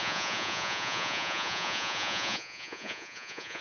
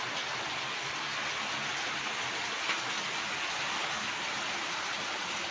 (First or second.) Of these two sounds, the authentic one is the second